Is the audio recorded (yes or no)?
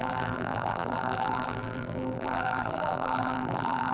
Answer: no